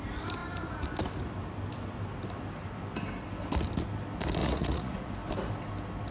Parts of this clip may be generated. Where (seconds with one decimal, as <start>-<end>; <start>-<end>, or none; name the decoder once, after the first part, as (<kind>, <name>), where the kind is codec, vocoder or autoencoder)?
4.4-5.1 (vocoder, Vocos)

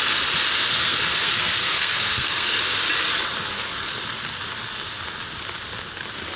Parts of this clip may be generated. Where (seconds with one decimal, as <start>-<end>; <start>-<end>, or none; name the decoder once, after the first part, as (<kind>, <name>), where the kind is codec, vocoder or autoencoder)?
0.7-2.6 (codec, SNAC)

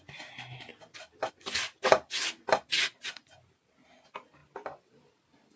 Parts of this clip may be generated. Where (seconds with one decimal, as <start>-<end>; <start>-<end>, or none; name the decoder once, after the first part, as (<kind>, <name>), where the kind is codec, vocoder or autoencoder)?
none